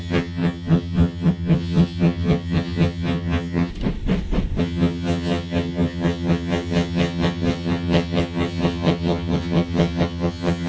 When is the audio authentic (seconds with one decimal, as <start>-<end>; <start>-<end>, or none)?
3.7-4.6